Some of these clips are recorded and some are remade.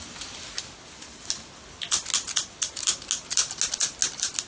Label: recorded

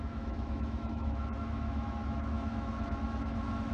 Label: remade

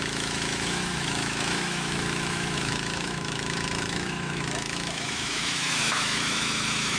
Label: remade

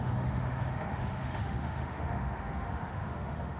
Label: remade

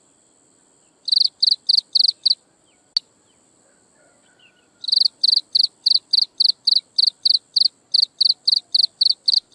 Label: recorded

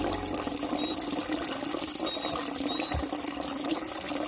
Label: recorded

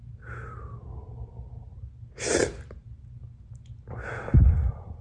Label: recorded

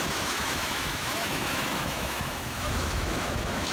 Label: remade